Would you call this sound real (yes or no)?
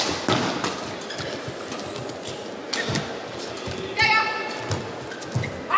yes